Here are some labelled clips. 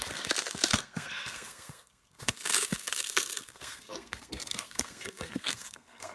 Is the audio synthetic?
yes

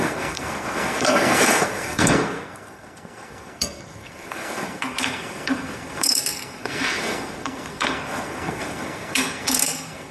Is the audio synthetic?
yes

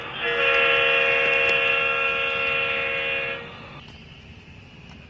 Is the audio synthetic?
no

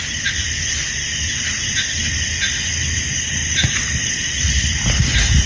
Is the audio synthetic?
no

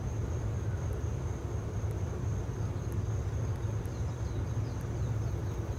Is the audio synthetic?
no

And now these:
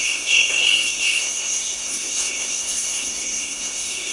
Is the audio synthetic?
yes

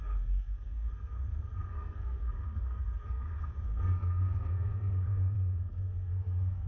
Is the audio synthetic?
yes